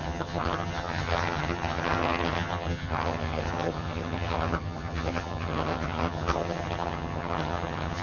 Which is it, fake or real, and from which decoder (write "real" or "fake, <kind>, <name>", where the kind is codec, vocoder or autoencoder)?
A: fake, vocoder, HiFi-GAN